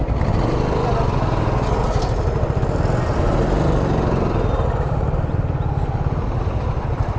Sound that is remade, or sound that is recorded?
recorded